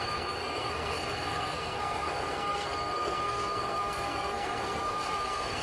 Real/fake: fake